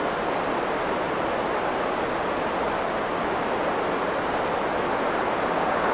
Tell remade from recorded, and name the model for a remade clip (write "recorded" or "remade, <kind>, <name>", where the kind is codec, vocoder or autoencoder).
recorded